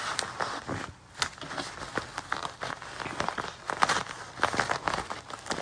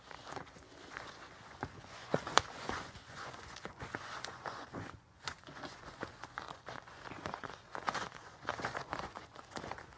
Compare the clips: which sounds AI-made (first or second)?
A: second